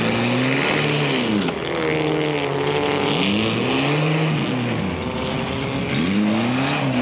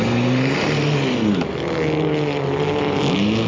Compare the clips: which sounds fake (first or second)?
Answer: second